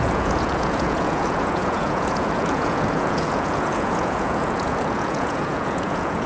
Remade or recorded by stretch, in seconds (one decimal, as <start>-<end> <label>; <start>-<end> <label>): 0.0-6.3 remade